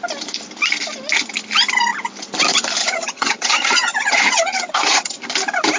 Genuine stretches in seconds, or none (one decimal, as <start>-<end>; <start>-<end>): 0.0-2.8; 5.2-5.8